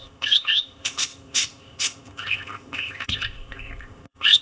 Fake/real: fake